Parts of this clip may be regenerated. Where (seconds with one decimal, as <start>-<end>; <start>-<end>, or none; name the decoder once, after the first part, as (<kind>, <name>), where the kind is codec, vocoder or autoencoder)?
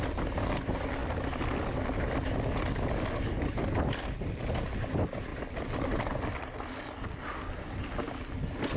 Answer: none